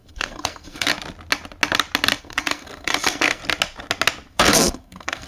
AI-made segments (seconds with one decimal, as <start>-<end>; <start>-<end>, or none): 0.0-0.9; 2.2-3.4; 4.3-5.3